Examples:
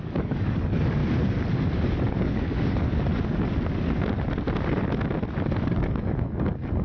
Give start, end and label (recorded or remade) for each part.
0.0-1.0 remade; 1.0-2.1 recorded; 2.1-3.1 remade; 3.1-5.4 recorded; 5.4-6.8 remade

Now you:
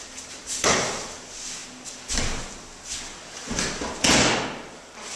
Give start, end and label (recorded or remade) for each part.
0.0-5.2 recorded

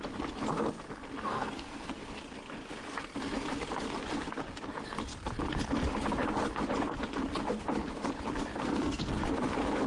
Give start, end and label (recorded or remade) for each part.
0.0-1.3 recorded; 1.3-2.0 remade; 2.0-8.6 recorded; 8.6-9.2 remade; 9.2-9.9 recorded

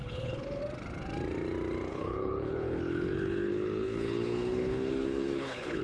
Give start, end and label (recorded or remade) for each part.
0.0-0.6 remade; 0.6-1.9 recorded; 1.9-5.8 remade

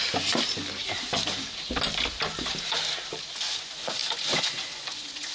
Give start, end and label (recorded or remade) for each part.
0.0-3.2 recorded; 3.2-5.3 remade

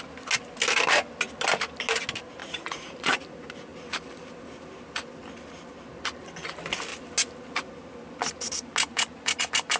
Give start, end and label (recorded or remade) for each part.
0.0-2.4 recorded; 2.4-3.1 remade; 3.1-9.8 recorded

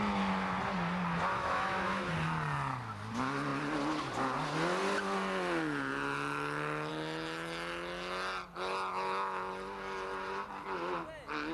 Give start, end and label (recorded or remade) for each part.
0.0-1.3 recorded; 1.3-2.1 remade; 2.1-8.9 recorded; 8.9-9.5 remade; 9.5-11.5 recorded

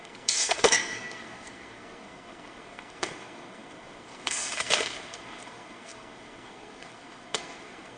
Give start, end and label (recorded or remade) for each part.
0.0-8.0 remade